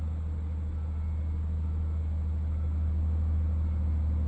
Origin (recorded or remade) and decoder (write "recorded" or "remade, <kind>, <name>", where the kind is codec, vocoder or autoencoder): recorded